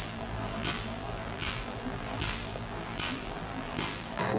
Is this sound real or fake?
fake